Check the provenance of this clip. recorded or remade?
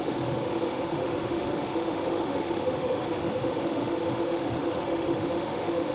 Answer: remade